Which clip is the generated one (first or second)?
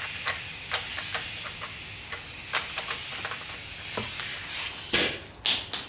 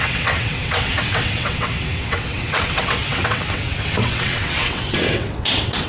second